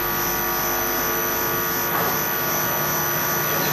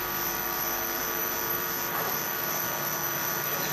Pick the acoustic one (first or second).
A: first